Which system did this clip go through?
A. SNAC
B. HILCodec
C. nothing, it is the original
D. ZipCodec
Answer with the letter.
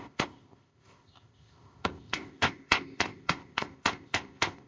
D